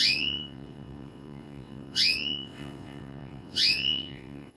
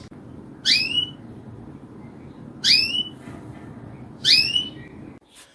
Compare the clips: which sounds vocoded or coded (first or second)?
first